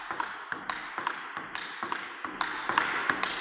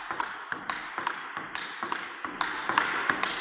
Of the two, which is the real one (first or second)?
first